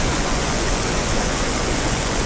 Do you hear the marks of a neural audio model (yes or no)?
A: yes